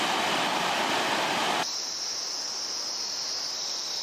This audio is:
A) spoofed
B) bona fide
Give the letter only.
B